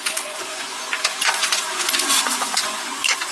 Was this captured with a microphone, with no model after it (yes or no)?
no